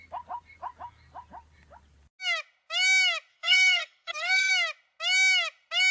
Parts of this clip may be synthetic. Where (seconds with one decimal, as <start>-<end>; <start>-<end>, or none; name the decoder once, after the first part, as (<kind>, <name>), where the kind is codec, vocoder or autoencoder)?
3.3-4.5 (codec, SNAC)